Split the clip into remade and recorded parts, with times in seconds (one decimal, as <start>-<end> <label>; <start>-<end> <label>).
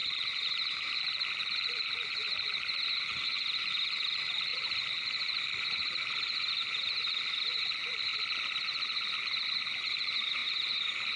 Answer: 0.0-8.1 remade; 8.1-9.8 recorded; 9.8-11.2 remade